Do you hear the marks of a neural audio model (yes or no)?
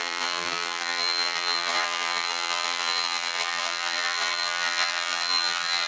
yes